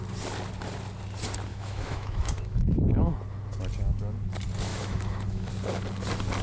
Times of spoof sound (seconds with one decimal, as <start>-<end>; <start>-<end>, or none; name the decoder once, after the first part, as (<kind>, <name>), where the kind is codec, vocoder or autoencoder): 1.5-3.1 (autoencoder, DAC-VAE); 4.7-5.5